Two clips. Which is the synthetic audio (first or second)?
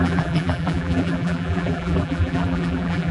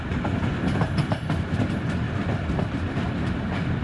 first